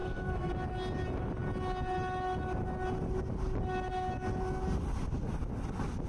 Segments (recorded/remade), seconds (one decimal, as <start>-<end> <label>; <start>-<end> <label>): 0.0-0.5 remade; 0.5-6.1 recorded

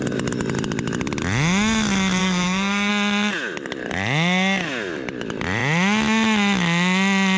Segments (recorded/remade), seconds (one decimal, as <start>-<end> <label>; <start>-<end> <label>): 0.0-2.2 recorded; 2.2-2.9 remade; 2.9-7.4 recorded

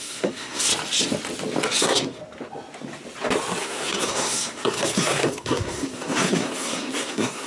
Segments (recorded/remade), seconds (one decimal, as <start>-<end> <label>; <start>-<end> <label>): 0.0-0.7 remade; 0.7-1.8 recorded; 1.8-2.2 remade; 2.2-3.6 recorded; 3.6-7.5 remade

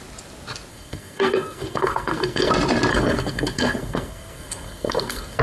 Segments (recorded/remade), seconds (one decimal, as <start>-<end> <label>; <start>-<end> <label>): 0.0-0.7 recorded; 0.7-2.5 remade; 2.5-2.9 recorded; 2.9-5.4 remade

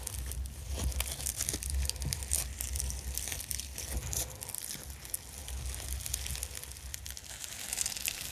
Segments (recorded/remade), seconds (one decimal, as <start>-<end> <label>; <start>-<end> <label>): 0.0-8.3 recorded

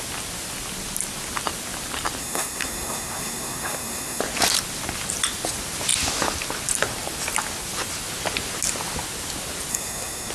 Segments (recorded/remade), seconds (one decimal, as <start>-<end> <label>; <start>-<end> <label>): 0.0-2.2 recorded; 2.2-4.2 remade; 4.2-9.7 recorded; 9.7-10.3 remade